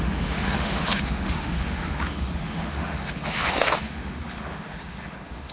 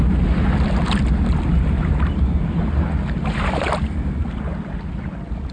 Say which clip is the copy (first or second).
first